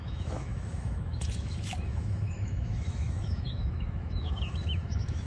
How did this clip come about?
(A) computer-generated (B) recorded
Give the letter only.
A